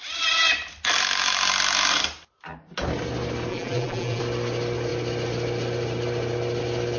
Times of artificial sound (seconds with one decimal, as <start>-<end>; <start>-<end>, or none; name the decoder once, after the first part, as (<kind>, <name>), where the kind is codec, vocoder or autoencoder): 3.5-4.2 (vocoder, BigVGAN v2)